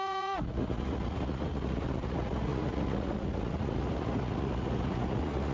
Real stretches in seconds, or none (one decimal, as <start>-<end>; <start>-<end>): none